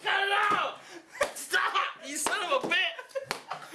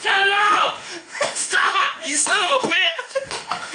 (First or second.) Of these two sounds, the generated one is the second